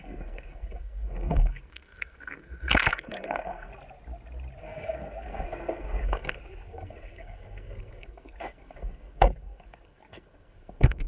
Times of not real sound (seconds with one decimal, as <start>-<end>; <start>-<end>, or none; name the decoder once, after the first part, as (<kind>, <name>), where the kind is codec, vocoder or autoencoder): 0.0-3.7 (codec, SNAC); 4.6-11.1